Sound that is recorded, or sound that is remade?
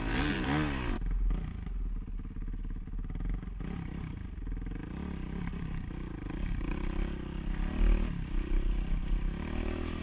recorded